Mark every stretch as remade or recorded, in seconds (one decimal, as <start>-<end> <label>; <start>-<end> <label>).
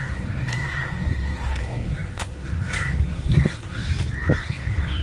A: 0.0-3.9 remade; 3.9-4.4 recorded; 4.4-5.0 remade